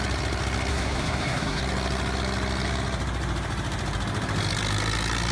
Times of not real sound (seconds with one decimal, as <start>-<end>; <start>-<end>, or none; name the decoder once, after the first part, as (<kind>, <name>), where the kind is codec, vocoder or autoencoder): 0.7-1.6 (codec, SNAC)